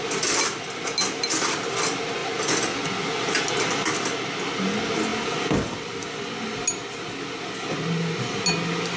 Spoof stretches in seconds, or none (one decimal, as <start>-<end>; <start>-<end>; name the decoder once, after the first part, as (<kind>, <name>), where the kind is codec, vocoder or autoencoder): none